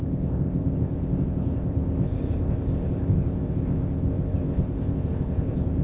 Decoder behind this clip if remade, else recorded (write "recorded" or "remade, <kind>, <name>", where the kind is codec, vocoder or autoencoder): remade, codec, ZipCodec